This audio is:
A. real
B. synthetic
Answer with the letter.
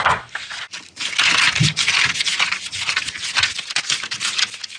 A